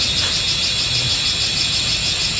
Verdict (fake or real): real